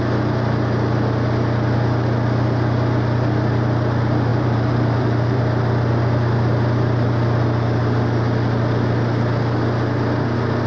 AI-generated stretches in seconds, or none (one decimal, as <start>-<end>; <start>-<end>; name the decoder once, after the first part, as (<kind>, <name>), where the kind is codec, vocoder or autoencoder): 4.3-5.4 (vocoder, BigVGAN v2)